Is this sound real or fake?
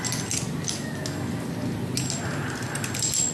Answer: real